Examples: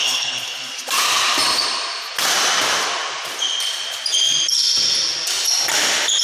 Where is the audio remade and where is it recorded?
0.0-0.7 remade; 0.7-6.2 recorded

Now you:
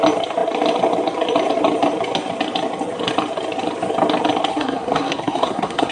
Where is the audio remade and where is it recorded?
0.0-4.5 recorded; 4.5-5.9 remade

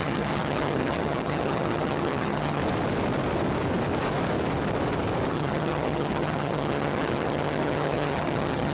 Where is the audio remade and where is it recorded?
0.0-2.6 remade; 2.6-5.3 recorded; 5.3-8.7 remade

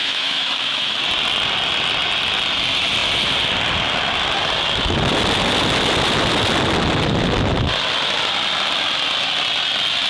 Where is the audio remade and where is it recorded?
0.0-1.0 remade; 1.0-10.1 recorded

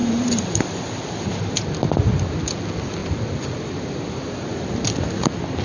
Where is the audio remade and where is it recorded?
0.0-1.7 remade; 1.7-3.0 recorded; 3.0-4.0 remade; 4.0-4.5 recorded; 4.5-5.6 remade

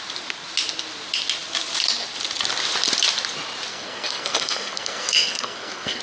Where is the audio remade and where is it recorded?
0.0-3.7 recorded; 3.7-6.0 remade

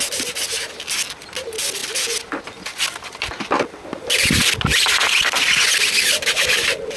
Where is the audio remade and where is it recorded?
0.0-7.0 recorded